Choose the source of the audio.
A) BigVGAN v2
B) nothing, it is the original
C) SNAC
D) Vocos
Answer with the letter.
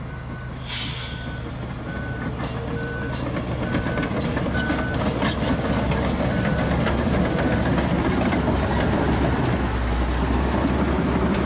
B